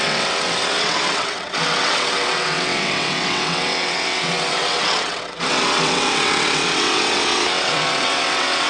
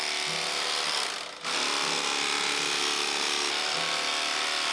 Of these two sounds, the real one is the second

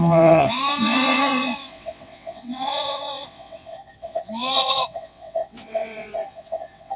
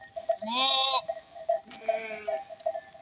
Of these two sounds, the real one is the second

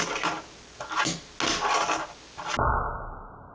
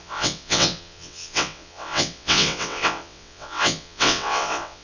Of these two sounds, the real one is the first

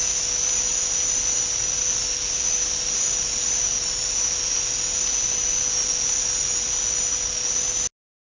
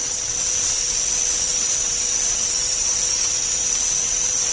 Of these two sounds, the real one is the first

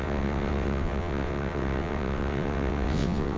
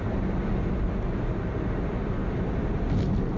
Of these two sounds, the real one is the second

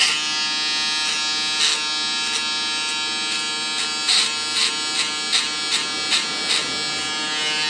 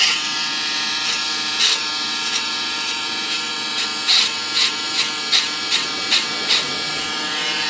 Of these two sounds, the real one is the first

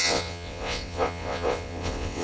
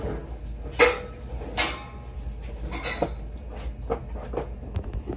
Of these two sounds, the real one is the second